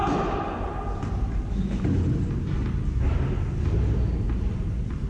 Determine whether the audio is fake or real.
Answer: real